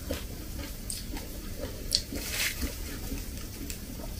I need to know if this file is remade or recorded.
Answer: remade